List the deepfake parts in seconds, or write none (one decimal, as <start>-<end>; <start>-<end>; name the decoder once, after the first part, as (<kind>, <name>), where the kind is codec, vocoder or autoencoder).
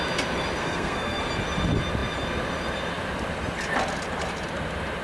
0.6-1.2 (codec, SNAC)